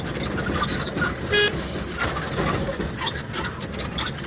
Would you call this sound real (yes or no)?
yes